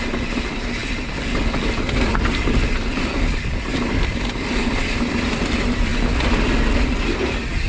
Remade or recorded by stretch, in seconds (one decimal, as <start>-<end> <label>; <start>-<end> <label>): 0.0-7.7 recorded